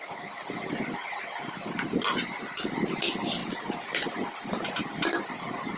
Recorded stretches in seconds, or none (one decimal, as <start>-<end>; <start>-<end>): 0.0-5.8